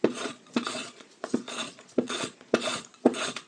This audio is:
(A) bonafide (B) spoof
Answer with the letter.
B